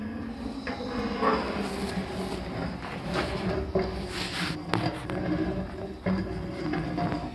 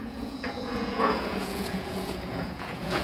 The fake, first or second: second